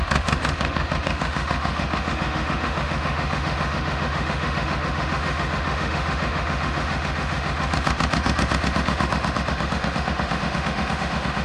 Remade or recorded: remade